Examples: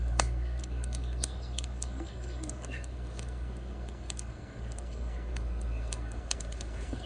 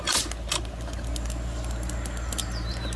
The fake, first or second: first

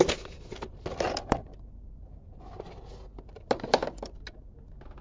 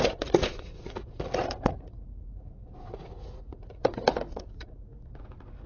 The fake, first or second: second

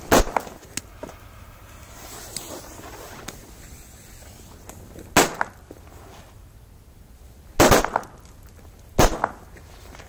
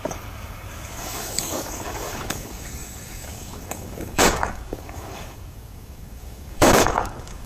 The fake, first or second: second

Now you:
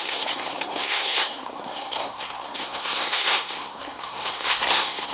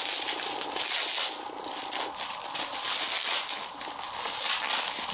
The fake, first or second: first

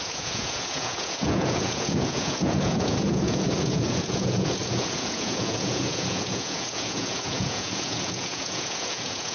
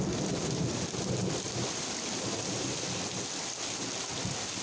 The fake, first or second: first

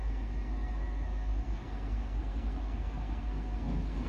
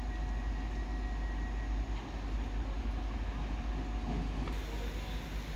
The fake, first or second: first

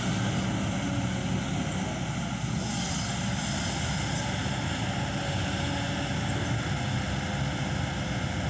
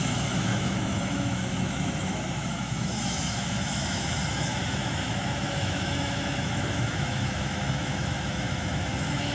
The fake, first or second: second